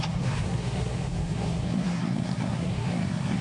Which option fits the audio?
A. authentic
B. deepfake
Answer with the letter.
B